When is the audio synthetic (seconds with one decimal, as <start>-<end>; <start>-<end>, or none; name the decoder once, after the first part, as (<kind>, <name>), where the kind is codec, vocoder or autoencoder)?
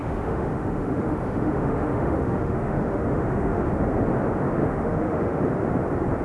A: 0.0-3.7 (autoencoder, DAC-VAE); 4.6-5.4